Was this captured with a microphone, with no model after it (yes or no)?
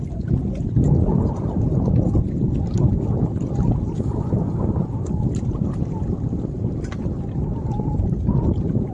yes